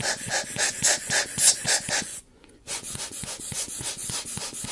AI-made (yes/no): yes